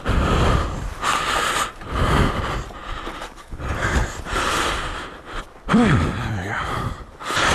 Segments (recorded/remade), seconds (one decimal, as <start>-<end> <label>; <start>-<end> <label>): 0.0-1.1 remade; 1.1-2.0 recorded; 2.0-7.5 remade